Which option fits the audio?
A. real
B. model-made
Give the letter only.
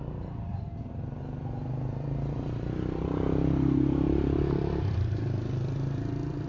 B